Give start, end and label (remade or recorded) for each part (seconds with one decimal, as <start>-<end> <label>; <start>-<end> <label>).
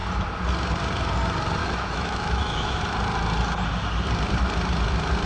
0.0-1.6 recorded; 1.6-2.8 remade; 2.8-5.3 recorded